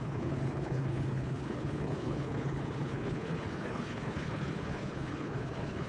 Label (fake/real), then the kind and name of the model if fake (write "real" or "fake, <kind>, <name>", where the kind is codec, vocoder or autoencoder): fake, codec, HILCodec